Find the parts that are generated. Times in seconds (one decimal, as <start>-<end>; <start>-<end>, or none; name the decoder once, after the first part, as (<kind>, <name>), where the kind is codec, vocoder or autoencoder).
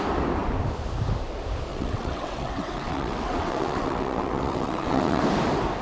1.7-5.2 (vocoder, WaveNeXt)